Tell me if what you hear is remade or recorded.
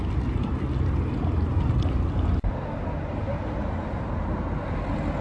recorded